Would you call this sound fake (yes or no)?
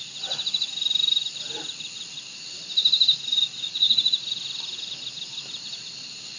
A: no